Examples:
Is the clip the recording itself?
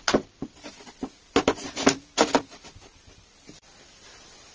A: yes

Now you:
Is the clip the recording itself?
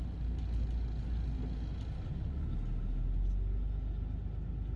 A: yes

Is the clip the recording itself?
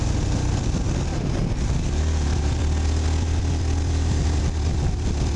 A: yes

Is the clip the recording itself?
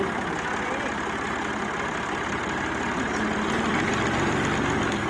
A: yes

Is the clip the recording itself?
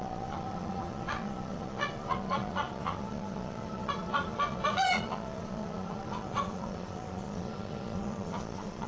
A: no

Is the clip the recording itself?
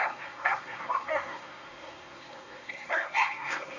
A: no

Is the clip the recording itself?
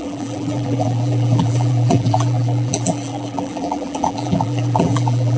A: no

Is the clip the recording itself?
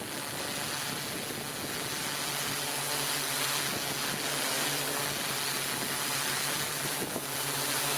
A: yes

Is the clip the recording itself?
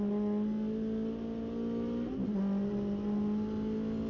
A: yes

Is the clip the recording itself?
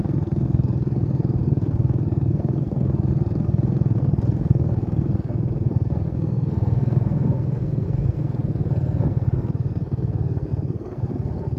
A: no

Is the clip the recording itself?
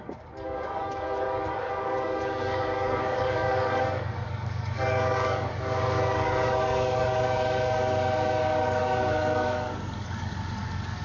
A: no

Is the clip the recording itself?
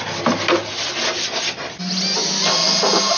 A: yes